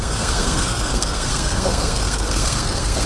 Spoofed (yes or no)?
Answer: yes